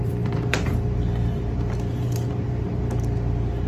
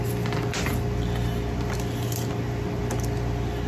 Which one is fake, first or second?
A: first